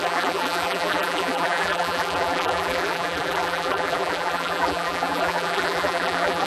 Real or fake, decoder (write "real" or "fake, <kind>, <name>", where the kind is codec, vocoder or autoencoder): fake, vocoder, BigVGAN v2